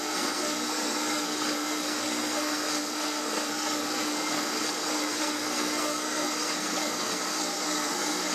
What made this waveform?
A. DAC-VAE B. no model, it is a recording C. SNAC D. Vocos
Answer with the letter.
C